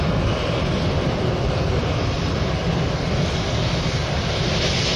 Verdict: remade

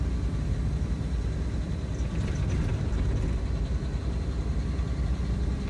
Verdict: recorded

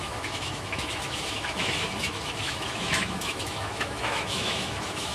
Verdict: remade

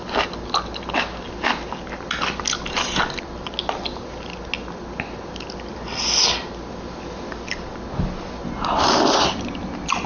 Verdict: recorded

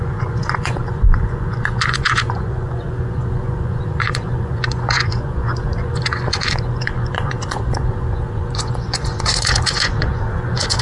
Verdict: remade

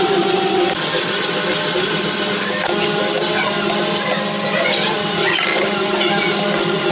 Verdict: recorded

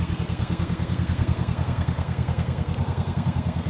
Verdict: remade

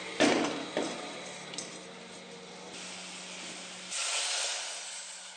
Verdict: recorded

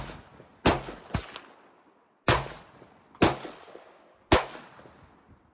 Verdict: recorded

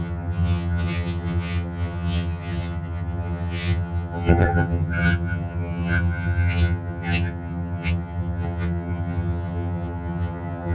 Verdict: remade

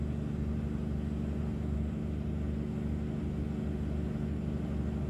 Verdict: recorded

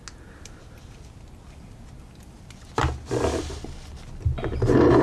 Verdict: recorded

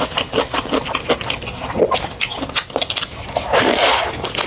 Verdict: recorded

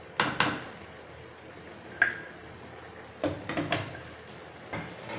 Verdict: recorded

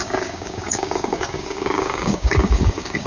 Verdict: remade